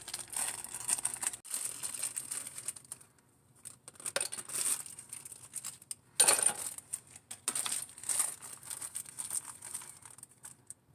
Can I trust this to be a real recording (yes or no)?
yes